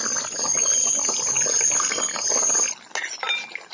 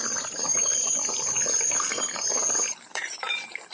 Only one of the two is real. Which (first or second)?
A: first